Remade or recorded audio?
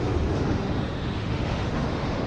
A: remade